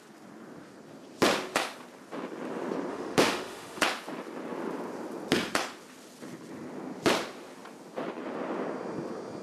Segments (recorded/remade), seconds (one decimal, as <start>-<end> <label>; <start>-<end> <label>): 0.0-2.9 recorded; 2.9-3.8 remade; 3.8-9.4 recorded